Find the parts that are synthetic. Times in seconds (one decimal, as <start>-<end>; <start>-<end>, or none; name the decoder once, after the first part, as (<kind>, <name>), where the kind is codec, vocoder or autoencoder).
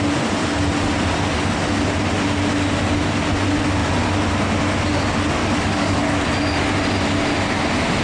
5.4-6.0 (codec, DAC)